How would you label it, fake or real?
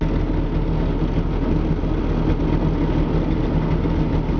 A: real